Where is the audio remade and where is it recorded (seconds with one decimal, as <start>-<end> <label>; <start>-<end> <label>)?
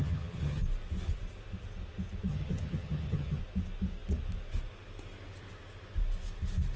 0.0-0.6 remade; 0.6-2.3 recorded; 2.3-3.4 remade; 3.4-6.8 recorded